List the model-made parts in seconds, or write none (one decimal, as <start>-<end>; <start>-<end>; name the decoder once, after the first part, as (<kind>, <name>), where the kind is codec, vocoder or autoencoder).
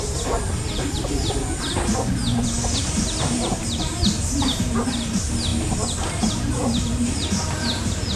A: 0.0-2.2 (vocoder, BigVGAN v2); 2.8-5.5; 6.2-8.2